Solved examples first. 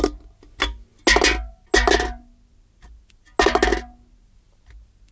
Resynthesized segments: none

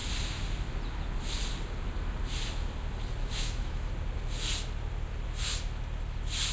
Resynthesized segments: 3.2-3.9 (autoencoder, DAC-VAE)

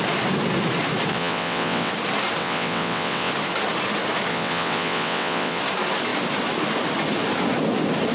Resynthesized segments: 1.1-1.9 (vocoder, WaveNeXt); 2.4-3.3; 4.3-5.6

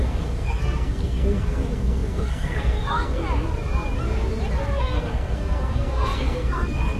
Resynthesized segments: 0.0-3.2 (codec, SNAC); 4.6-7.0

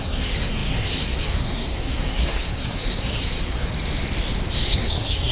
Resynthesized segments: 0.0-3.7 (codec, SNAC); 4.5-5.3

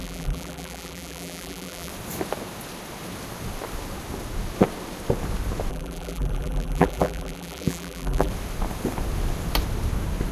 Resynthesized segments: 0.0-1.9 (vocoder, BigVGAN v2); 5.7-8.3